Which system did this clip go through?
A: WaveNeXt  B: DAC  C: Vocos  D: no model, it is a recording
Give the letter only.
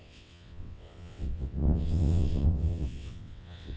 A